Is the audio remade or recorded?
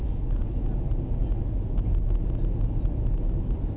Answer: recorded